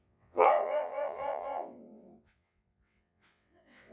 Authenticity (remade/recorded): remade